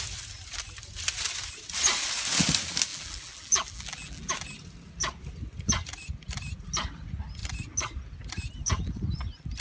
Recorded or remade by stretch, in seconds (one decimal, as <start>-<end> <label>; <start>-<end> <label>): 0.0-2.9 recorded; 2.9-4.3 remade; 4.3-9.6 recorded